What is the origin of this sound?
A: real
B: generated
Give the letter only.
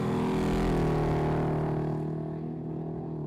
A